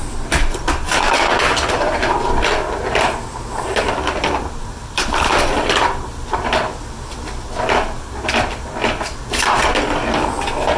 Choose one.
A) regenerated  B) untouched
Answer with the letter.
B